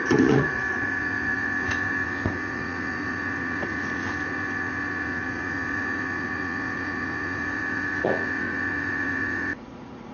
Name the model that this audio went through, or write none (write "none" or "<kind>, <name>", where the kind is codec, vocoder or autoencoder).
vocoder, Vocos